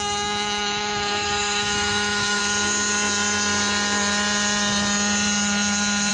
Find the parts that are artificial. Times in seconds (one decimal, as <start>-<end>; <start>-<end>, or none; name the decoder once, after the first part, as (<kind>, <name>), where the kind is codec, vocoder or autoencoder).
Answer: 0.0-2.4 (autoencoder, DAC-VAE)